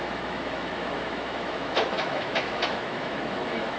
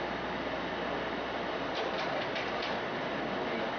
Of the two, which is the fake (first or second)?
first